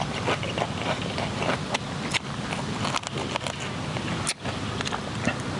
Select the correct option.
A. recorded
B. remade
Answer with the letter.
A